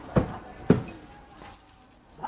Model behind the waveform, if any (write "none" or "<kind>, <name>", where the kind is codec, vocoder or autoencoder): none